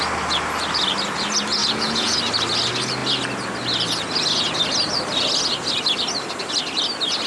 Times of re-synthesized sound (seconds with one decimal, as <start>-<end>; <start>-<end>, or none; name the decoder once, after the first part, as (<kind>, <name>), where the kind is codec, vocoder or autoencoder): 1.6-2.2 (vocoder, Vocos)